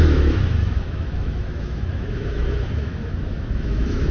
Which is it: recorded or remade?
remade